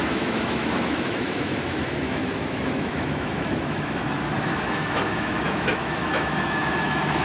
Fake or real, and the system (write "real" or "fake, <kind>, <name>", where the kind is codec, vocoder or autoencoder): fake, autoencoder, DAC-VAE